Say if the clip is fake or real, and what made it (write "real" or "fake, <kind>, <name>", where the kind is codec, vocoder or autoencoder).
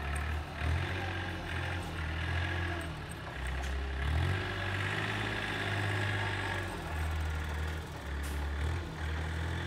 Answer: real